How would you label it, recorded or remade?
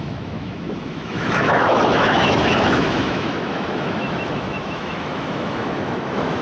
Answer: remade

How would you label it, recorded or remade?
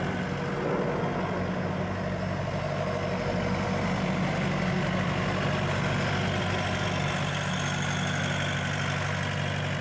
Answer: recorded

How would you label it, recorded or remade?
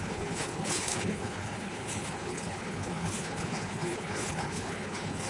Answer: remade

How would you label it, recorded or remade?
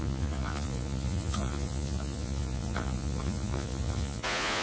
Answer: remade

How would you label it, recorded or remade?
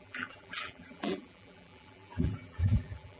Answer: remade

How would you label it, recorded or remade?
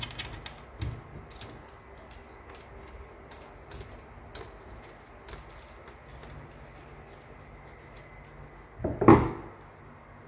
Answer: recorded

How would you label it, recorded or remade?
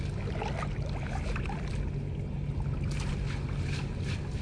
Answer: recorded